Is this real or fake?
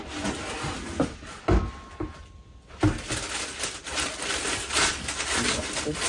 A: real